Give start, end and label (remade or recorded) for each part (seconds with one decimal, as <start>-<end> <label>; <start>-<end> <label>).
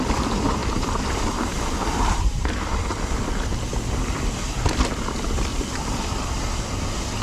0.0-0.6 recorded; 0.6-4.8 remade; 4.8-5.5 recorded; 5.5-6.3 remade; 6.3-7.2 recorded